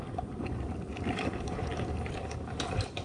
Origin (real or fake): fake